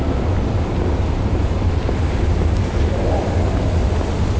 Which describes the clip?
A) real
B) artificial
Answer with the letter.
B